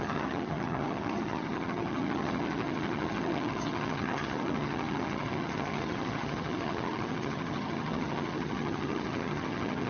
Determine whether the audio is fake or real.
fake